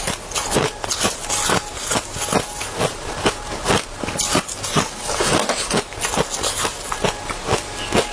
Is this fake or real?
real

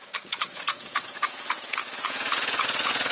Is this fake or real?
fake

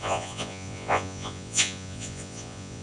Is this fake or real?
fake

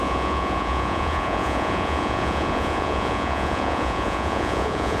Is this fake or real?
fake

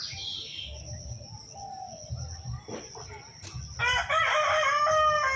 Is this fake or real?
real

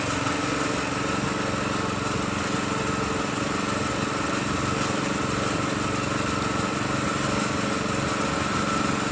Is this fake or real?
real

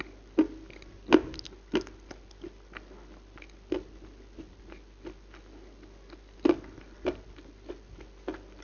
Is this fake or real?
real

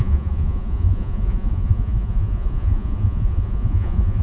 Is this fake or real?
fake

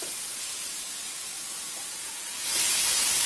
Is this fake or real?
fake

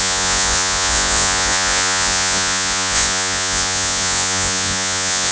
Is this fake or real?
fake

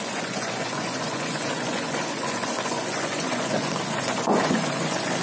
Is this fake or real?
fake